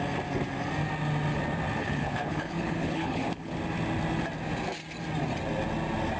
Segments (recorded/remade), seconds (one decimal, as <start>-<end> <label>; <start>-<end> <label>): 0.0-1.8 recorded; 1.8-3.5 remade; 3.5-6.2 recorded